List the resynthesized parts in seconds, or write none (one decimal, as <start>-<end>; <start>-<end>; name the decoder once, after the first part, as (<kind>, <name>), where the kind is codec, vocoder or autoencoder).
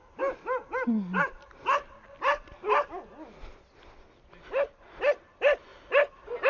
none